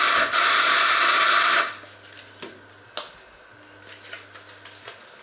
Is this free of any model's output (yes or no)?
yes